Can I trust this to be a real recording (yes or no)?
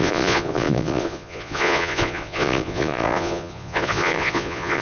no